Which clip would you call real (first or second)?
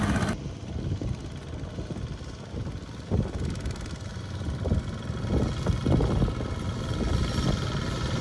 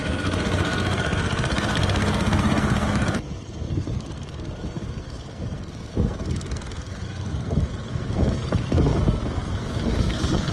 first